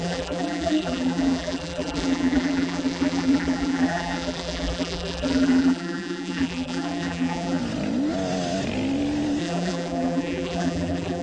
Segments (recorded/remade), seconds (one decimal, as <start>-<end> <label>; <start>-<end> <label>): 0.0-7.6 remade; 7.6-9.4 recorded; 9.4-11.2 remade